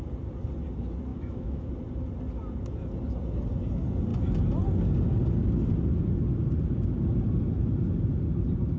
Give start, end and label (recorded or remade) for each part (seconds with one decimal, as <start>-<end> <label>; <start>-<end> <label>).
0.0-1.1 recorded; 1.1-1.7 remade; 1.7-8.8 recorded